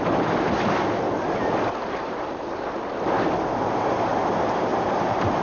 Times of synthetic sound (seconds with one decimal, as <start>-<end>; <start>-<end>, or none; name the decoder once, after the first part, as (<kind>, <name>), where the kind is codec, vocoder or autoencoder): 1.8-2.7 (vocoder, BigVGAN v2); 4.7-5.4